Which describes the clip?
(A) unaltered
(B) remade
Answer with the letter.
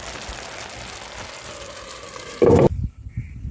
A